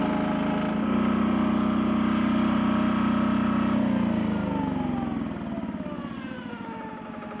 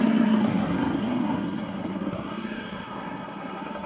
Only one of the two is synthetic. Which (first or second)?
second